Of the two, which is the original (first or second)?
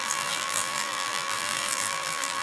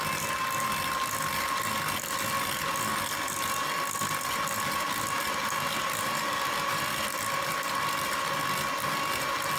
second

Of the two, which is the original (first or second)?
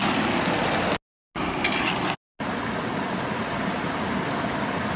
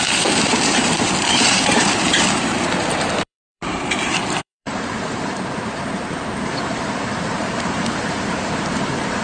first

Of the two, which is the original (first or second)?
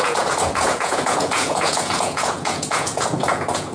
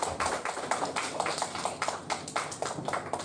second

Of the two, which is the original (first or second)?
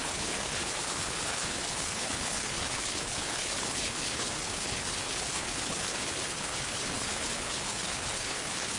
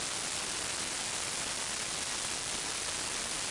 second